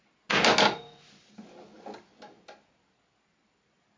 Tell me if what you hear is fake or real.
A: real